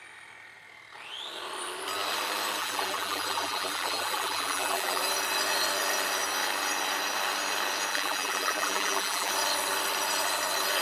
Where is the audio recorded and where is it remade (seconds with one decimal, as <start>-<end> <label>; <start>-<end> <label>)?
0.0-2.6 recorded; 2.6-5.0 remade; 5.0-7.9 recorded; 7.9-9.3 remade; 9.3-10.8 recorded